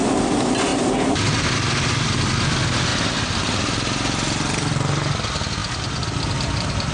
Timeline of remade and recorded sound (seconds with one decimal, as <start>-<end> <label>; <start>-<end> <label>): 0.0-6.9 recorded